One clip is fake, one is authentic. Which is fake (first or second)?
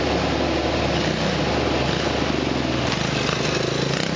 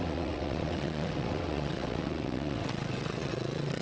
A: second